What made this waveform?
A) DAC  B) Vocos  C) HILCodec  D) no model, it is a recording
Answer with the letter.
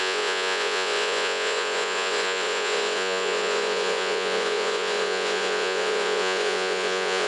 B